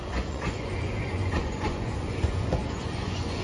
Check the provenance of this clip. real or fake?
fake